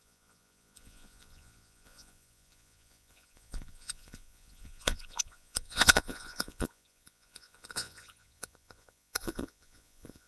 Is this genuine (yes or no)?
no